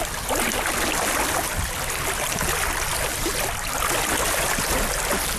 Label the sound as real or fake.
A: real